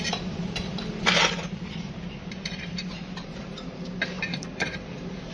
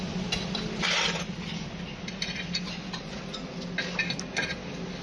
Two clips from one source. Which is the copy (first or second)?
first